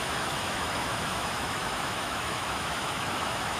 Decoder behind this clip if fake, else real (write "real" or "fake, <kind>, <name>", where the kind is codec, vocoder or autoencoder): fake, autoencoder, DAC-VAE